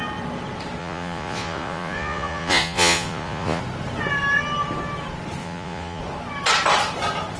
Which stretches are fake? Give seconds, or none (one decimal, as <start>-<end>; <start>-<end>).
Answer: 0.8-3.6; 5.4-6.0